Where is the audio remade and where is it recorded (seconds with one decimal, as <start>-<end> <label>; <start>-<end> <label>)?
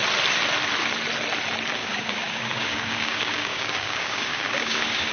0.0-1.8 recorded; 1.8-5.1 remade